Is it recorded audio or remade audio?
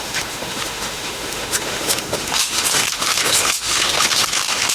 remade